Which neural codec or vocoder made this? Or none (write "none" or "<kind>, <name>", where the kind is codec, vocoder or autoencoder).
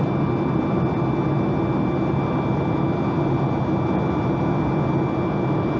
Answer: none